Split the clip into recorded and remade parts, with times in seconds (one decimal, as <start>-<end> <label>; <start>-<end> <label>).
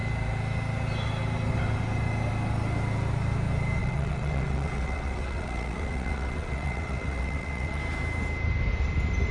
0.0-3.8 recorded; 3.8-7.8 remade; 7.8-9.3 recorded